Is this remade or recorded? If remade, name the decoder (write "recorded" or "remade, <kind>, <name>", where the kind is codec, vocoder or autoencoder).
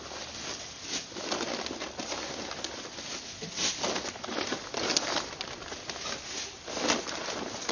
recorded